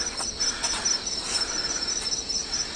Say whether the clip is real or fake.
real